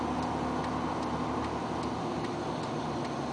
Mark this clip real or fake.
real